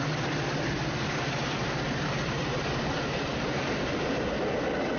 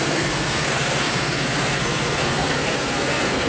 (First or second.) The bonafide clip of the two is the first